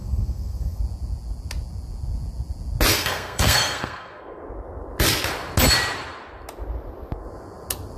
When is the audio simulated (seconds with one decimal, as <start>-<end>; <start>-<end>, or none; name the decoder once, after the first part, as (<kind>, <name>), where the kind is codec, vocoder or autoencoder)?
0.0-0.8 (codec, SNAC); 2.9-4.4